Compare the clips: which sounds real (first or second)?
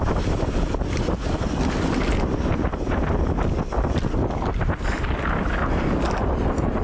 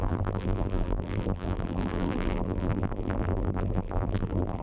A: first